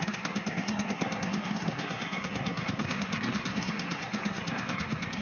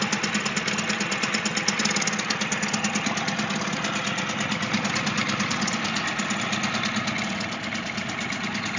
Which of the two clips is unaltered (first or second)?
second